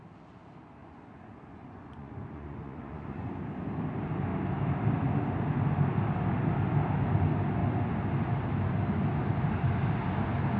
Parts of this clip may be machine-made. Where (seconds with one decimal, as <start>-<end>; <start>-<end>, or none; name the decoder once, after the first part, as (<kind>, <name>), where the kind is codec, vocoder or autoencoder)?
0.8-3.3 (vocoder, Vocos)